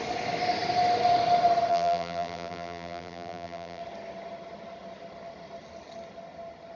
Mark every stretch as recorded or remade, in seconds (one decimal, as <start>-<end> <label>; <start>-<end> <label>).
0.0-1.7 recorded; 1.7-3.8 remade; 3.8-6.8 recorded